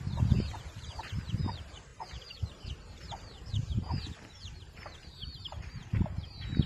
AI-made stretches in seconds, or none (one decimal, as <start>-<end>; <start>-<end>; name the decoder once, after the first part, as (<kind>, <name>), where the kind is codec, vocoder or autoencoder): 0.0-6.7 (vocoder, BigVGAN v2)